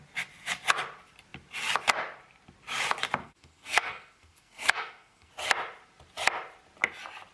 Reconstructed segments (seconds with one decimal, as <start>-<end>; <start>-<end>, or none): 3.2-5.3